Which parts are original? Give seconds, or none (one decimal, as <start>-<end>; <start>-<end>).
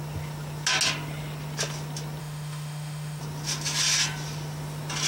0.0-2.2; 3.2-5.1